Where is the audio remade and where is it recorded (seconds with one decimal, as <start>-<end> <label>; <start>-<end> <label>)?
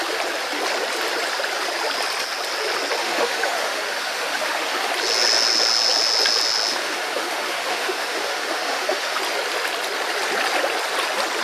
0.0-3.0 recorded; 3.0-4.9 remade; 4.9-6.7 recorded; 6.7-9.2 remade; 9.2-11.4 recorded